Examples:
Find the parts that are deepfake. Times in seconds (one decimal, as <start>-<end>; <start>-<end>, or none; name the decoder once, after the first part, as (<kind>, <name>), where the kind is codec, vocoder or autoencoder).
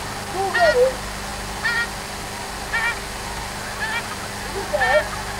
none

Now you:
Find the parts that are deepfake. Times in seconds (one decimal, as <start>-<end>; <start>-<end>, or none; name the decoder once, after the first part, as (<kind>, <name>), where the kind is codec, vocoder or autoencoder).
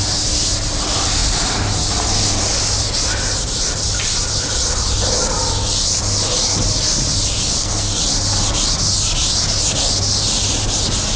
7.4-8.0 (codec, SNAC)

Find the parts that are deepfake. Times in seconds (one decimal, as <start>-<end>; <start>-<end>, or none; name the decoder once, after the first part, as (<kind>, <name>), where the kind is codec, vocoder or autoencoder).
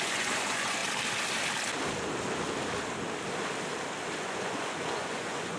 0.0-0.8 (vocoder, Vocos); 4.2-5.6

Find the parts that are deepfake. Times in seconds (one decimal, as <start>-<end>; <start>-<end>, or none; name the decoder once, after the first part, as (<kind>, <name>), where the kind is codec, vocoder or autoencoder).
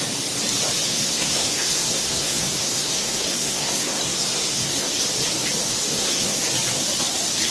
0.9-5.0 (codec, SNAC); 5.9-6.5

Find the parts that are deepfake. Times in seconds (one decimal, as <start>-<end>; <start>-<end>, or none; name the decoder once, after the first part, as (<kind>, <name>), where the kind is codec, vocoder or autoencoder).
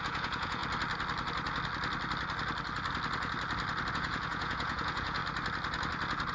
0.0-0.6 (vocoder, Vocos); 3.9-5.2